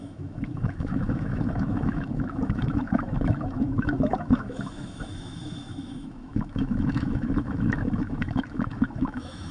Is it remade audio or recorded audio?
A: remade